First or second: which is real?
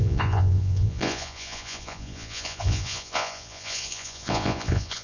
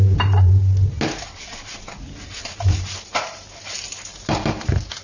second